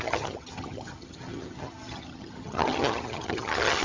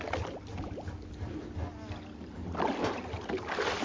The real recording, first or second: second